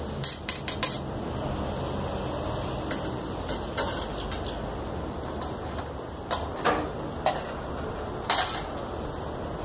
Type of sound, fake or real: real